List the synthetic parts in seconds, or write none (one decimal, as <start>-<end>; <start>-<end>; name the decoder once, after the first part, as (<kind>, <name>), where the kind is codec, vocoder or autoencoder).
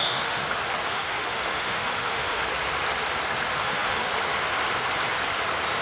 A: 0.0-0.4 (autoencoder, DAC-VAE); 0.9-2.4; 3.6-4.1